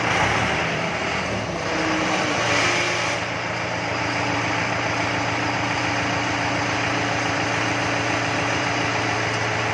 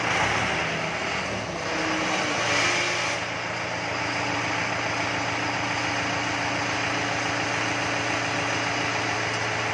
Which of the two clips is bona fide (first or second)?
second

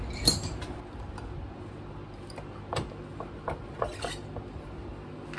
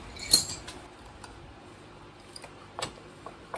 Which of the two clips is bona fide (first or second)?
first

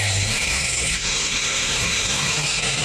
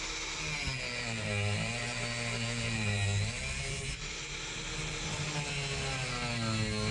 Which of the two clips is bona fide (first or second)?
second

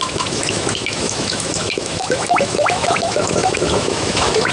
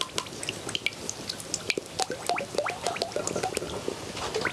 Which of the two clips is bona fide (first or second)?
second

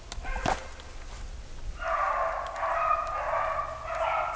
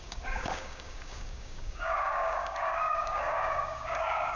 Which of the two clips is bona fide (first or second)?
first